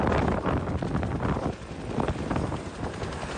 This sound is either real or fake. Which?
real